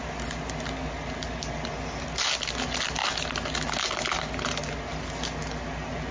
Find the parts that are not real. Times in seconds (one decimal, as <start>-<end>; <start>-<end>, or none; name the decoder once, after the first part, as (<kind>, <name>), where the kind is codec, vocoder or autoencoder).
none